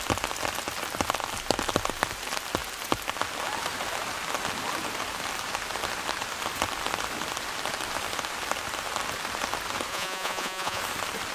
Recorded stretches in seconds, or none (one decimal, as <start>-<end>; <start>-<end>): 0.0-9.9; 10.8-11.3